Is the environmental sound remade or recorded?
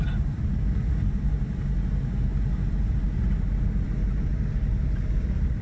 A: recorded